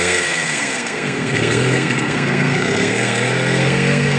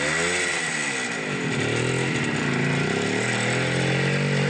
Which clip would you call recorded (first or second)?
second